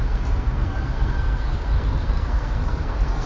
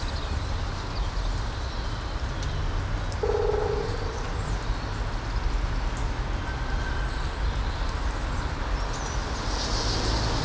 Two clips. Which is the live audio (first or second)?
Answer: second